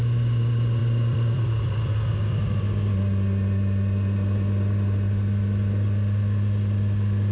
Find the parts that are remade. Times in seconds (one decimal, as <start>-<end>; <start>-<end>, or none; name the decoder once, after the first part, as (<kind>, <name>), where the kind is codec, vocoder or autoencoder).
0.8-2.1 (vocoder, BigVGAN v2)